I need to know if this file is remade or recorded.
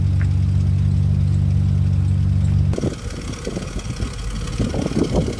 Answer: recorded